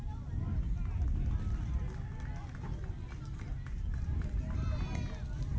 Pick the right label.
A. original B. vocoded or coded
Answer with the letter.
A